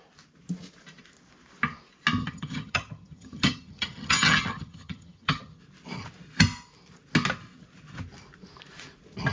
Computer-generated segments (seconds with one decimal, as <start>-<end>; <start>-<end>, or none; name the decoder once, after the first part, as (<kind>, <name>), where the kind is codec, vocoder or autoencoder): 2.2-5.6 (vocoder, HiFi-GAN)